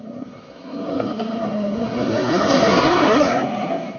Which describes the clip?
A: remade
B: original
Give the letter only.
A